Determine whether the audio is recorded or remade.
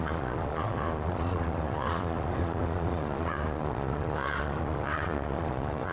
remade